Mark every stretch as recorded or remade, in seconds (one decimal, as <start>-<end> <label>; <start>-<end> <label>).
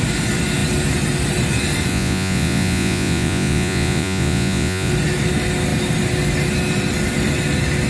0.0-1.9 recorded; 1.9-4.9 remade; 4.9-7.9 recorded